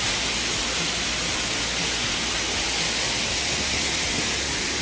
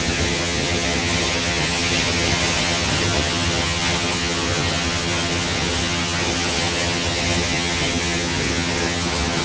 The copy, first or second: second